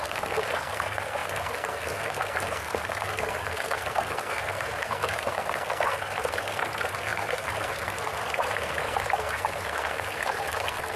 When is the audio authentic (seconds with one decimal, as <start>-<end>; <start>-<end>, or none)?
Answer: none